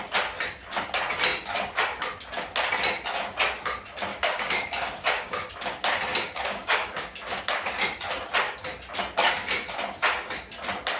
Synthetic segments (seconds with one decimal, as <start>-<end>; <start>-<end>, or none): 4.1-5.5; 6.1-7.4